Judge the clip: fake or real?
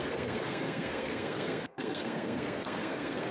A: fake